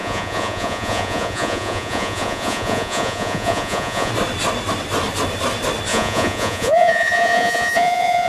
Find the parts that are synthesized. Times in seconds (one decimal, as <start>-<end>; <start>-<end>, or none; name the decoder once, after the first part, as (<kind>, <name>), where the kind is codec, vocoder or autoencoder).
0.0-4.1 (vocoder, Vocos); 5.9-8.3